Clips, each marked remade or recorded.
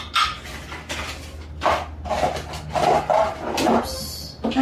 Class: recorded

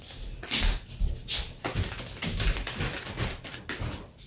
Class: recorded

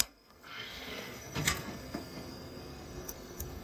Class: remade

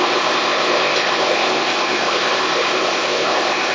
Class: remade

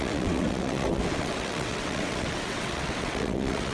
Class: remade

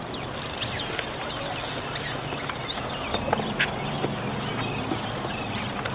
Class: recorded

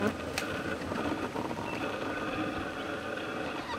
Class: recorded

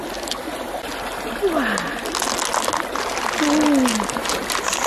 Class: recorded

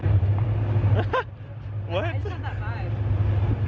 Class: recorded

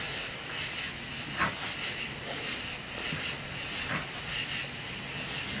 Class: recorded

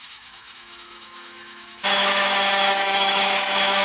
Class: remade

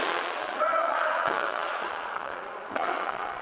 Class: remade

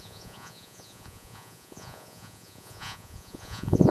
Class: remade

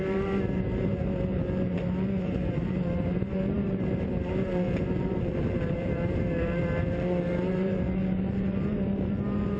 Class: remade